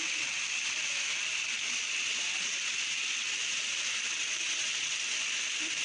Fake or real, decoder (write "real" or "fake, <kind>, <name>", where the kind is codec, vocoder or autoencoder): real